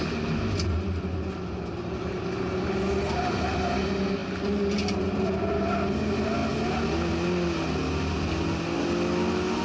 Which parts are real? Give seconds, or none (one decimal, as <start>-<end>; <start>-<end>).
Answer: 0.0-9.6